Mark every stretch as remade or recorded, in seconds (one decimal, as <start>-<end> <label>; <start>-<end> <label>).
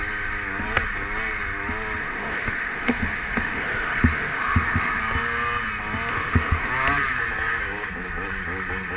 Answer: 0.0-2.0 recorded; 2.0-5.0 remade; 5.0-6.1 recorded; 6.1-6.7 remade; 6.7-9.0 recorded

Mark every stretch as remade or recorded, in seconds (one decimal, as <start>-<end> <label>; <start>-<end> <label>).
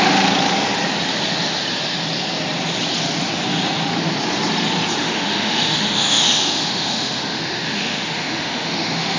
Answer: 0.0-5.0 recorded; 5.0-9.2 remade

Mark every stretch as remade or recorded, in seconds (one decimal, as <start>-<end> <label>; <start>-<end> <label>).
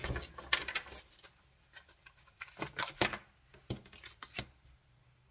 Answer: 0.0-5.3 recorded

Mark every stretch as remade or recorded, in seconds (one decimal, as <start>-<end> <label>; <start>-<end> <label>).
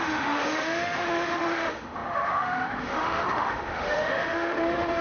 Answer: 0.0-5.0 remade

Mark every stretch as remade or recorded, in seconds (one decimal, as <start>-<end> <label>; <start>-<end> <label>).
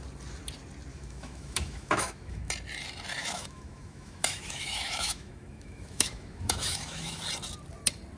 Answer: 0.0-0.9 recorded; 0.9-2.5 remade; 2.5-3.2 recorded; 3.2-7.2 remade; 7.2-8.2 recorded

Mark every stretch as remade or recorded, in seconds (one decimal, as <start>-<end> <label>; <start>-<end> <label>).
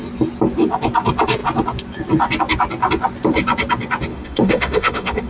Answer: 0.0-4.1 recorded; 4.1-5.3 remade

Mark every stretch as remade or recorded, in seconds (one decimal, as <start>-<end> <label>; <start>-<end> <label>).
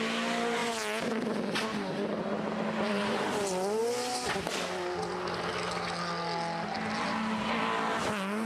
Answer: 0.0-8.4 recorded